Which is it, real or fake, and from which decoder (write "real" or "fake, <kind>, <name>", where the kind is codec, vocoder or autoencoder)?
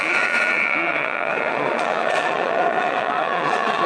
fake, vocoder, Vocos